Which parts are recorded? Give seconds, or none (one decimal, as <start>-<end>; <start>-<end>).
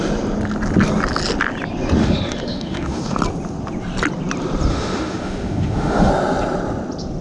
0.0-2.0; 3.2-4.7; 6.1-7.2